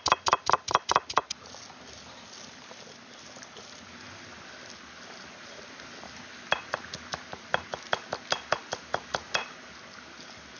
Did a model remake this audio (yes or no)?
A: no